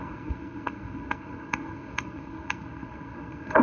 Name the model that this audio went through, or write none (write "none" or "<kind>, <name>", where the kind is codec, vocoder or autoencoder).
codec, SNAC